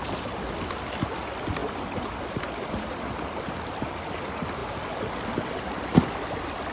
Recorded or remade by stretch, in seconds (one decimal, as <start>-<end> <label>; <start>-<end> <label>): 0.0-6.7 recorded